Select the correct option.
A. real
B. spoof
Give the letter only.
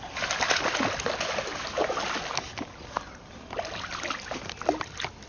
A